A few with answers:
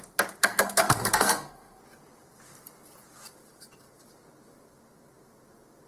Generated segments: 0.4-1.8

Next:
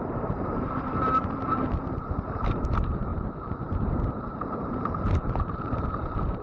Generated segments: 0.0-6.4

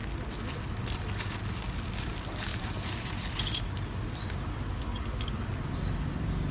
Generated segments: 2.5-3.5

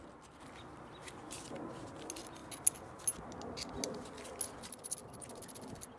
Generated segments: none

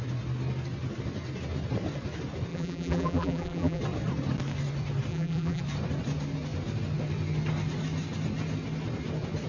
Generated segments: 2.5-3.8; 5.1-5.6

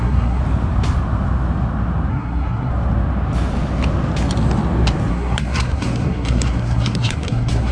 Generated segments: 0.0-0.4; 2.1-2.7; 5.1-7.7

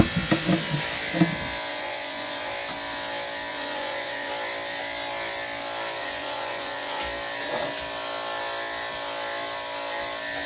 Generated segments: 1.7-2.5; 3.5-4.3; 6.0-7.0

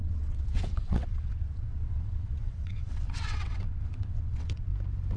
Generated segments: 0.0-4.7